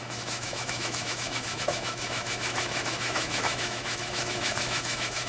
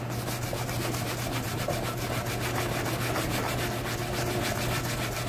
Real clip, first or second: second